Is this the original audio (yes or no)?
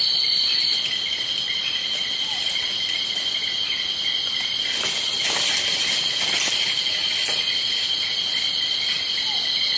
yes